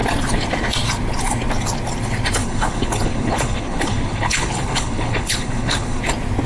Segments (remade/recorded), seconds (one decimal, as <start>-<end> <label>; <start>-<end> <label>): 0.0-2.4 recorded; 2.4-6.0 remade; 6.0-6.5 recorded